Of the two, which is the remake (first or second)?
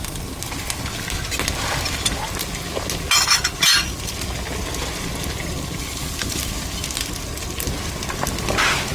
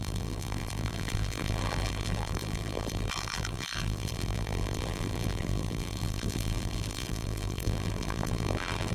second